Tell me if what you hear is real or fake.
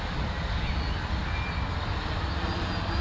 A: real